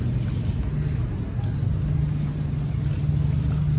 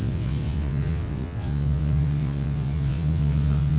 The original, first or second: first